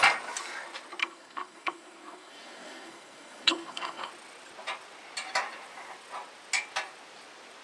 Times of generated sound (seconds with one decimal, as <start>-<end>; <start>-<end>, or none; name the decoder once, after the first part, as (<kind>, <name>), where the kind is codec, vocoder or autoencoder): 1.0-4.1 (codec, SNAC)